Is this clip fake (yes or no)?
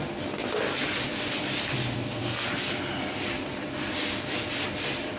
no